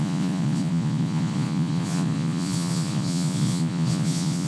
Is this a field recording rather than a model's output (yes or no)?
no